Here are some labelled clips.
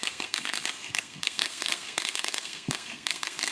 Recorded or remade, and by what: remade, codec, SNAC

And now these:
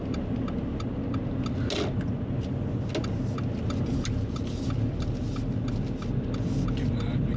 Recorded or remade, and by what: recorded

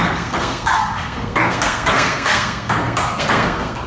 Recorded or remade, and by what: remade, codec, SNAC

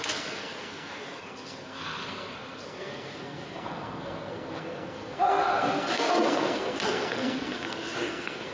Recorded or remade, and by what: remade, codec, SNAC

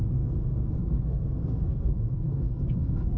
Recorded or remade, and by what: remade, codec, SNAC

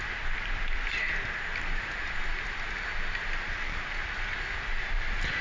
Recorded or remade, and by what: recorded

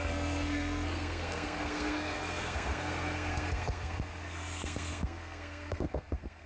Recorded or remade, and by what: remade, codec, SNAC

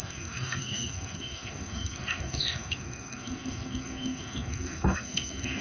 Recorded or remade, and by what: remade, codec, SNAC